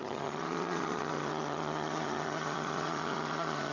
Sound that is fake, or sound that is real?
fake